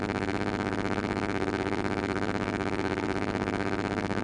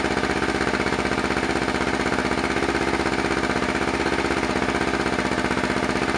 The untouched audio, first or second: second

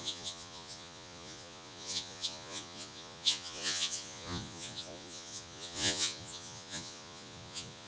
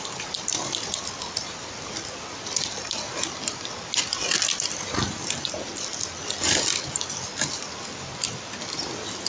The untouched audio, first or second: second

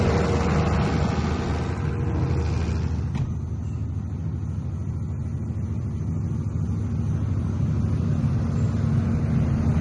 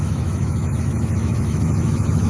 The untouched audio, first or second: first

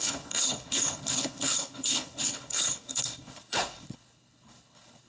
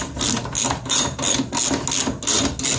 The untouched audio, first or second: second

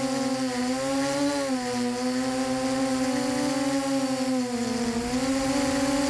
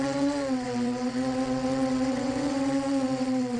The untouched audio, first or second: first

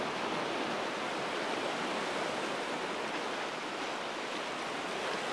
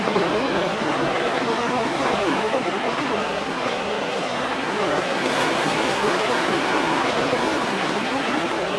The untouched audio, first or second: first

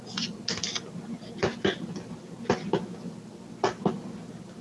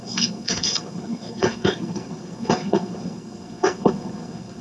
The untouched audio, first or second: first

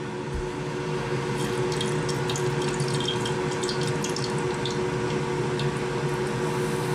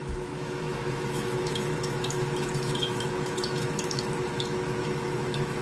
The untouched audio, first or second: first